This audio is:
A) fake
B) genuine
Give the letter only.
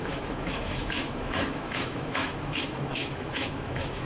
A